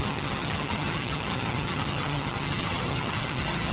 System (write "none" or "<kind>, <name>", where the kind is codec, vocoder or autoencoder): vocoder, HiFi-GAN